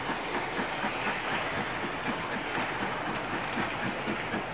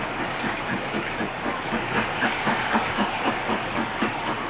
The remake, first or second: second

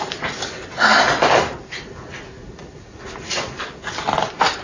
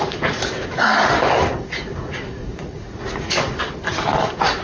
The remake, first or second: second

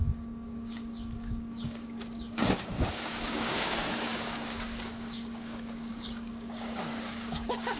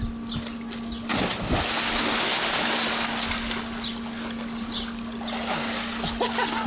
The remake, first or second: first